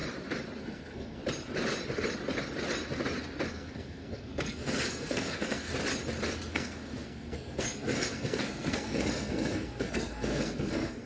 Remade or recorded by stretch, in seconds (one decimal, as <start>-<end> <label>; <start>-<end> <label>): 0.0-0.6 recorded; 0.6-1.2 remade; 1.2-3.5 recorded; 3.5-5.7 remade; 5.7-6.5 recorded; 6.5-11.1 remade